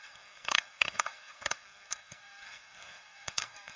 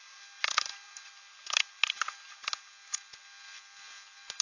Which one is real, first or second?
second